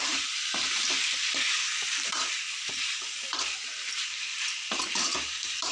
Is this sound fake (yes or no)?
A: yes